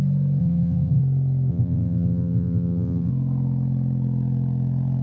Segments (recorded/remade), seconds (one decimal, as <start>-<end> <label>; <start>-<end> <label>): 0.0-0.4 recorded; 0.4-1.0 remade; 1.0-1.5 recorded; 1.5-3.1 remade; 3.1-5.0 recorded